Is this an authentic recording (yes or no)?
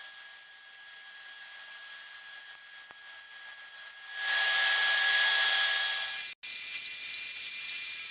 yes